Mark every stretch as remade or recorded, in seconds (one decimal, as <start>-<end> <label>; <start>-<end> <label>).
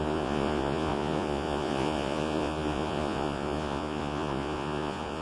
0.0-5.2 remade